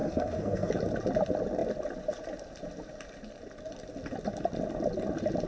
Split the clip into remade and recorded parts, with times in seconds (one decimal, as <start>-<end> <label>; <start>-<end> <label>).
0.0-0.7 remade; 0.7-5.5 recorded